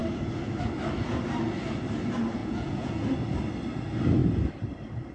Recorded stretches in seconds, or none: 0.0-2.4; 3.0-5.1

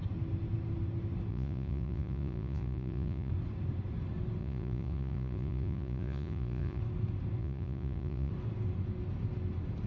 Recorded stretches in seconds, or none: 0.0-1.3; 3.3-4.4; 6.8-7.4; 8.3-9.9

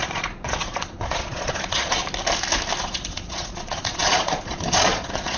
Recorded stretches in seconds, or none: 2.0-2.8

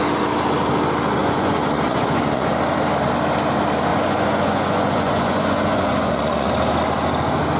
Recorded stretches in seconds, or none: 0.0-1.2; 2.5-3.9; 6.5-7.6

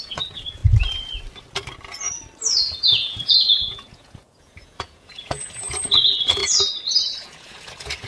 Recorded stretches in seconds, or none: 0.6-2.6; 6.4-7.0

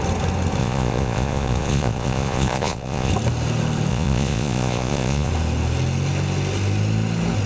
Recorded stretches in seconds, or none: 0.0-0.6; 3.1-3.9; 5.3-7.5

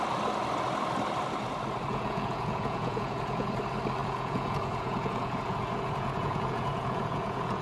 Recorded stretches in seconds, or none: 0.0-1.9; 3.6-4.0